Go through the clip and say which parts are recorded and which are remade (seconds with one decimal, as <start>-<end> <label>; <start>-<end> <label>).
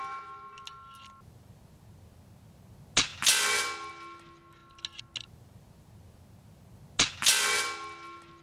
0.0-8.4 recorded